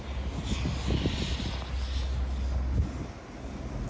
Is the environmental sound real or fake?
real